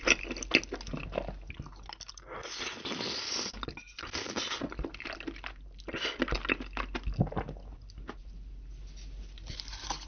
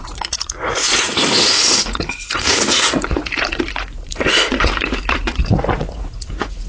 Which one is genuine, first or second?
first